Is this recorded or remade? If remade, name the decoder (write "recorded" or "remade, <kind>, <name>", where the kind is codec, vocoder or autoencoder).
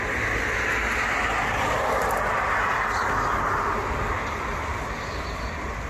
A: recorded